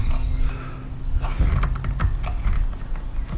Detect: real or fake real